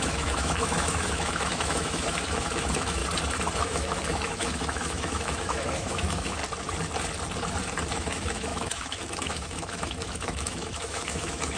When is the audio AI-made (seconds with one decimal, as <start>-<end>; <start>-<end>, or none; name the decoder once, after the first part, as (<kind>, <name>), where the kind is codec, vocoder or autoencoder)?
0.0-3.0 (autoencoder, DAC-VAE); 3.6-6.4; 7.9-11.6